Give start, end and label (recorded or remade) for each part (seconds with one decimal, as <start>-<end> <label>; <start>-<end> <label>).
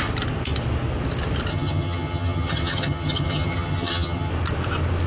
0.0-1.5 recorded; 1.5-4.3 remade; 4.3-5.1 recorded